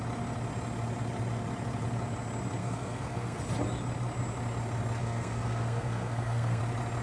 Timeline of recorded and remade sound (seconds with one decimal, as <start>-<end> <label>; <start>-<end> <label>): 0.0-2.6 recorded; 2.6-3.4 remade; 3.4-5.0 recorded; 5.0-6.6 remade; 6.6-7.0 recorded